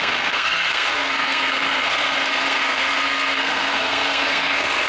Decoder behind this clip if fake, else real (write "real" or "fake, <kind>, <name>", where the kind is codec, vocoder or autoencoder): fake, codec, SNAC